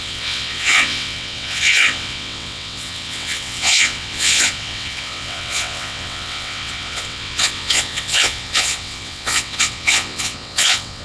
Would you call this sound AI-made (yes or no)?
yes